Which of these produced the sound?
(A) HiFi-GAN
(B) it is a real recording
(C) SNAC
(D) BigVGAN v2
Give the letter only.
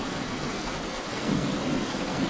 C